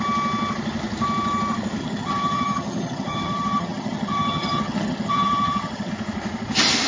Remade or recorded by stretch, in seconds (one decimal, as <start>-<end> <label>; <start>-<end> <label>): 0.0-1.8 recorded; 1.8-5.9 remade; 5.9-6.9 recorded